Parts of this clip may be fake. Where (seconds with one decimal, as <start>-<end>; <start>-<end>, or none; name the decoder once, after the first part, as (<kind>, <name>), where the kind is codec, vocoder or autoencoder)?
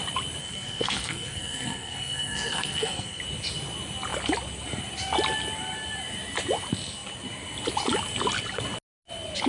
0.4-3.2 (codec, SNAC)